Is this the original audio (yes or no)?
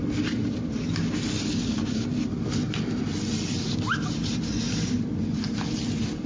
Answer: yes